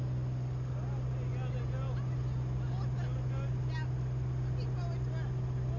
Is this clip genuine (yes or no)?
yes